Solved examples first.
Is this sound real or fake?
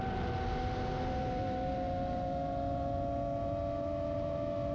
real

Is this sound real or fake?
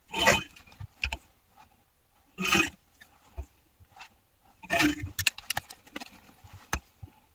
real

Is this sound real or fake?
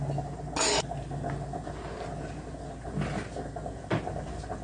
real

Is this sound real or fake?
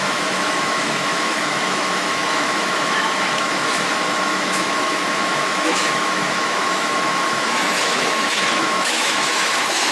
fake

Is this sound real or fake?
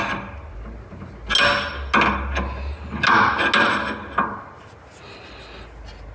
real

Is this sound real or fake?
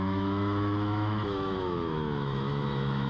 fake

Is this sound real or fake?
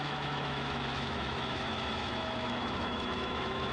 fake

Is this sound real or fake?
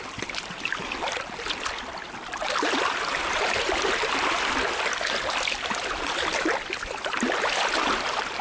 real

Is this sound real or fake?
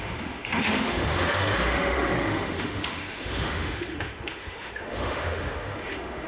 fake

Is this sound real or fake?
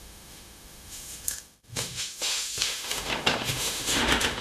fake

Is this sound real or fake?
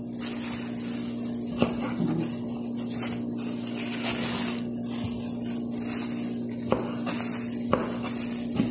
real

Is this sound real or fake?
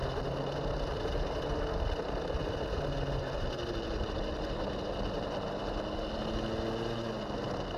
real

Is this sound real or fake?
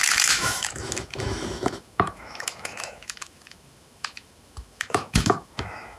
fake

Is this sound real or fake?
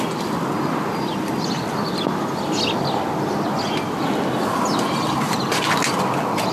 real